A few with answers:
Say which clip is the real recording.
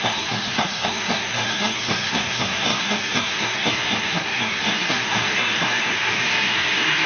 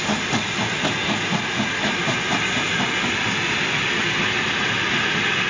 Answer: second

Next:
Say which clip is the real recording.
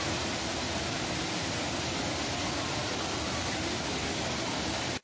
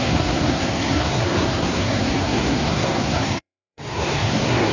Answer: first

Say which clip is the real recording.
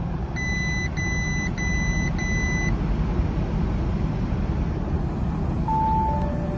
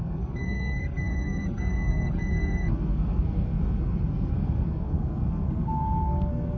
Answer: first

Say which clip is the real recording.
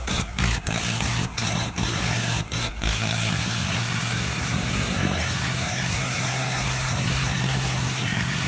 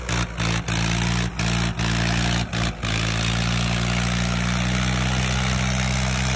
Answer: second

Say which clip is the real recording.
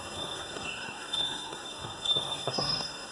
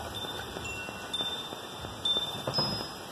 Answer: second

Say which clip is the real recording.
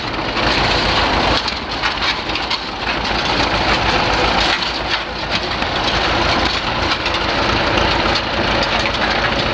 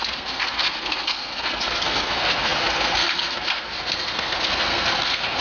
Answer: first